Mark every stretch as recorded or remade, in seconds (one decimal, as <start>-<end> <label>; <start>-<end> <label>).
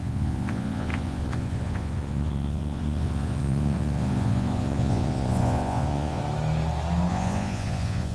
0.0-6.2 remade; 6.2-7.1 recorded; 7.1-8.1 remade